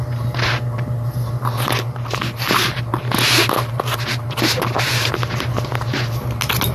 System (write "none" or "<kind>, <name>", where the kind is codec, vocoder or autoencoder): none